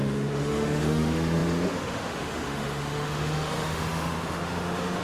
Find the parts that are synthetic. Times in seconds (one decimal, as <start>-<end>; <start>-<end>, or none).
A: 0.0-5.0